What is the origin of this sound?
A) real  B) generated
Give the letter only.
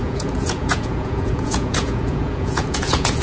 B